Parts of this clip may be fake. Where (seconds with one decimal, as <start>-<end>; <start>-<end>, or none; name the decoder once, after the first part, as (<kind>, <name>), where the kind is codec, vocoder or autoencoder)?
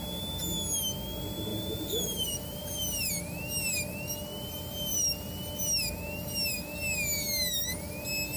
1.5-3.1 (vocoder, BigVGAN v2)